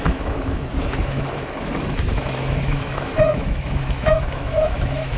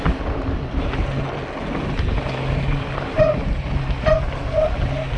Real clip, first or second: second